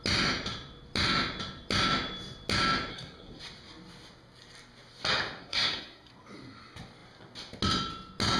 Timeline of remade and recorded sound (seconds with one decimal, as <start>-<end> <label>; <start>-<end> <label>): 0.0-2.9 recorded; 2.9-3.4 remade; 3.4-5.4 recorded; 5.4-6.1 remade; 6.1-8.4 recorded